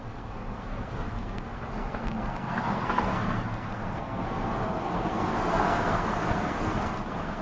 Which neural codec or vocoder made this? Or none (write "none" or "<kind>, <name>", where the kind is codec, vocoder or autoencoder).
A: codec, SNAC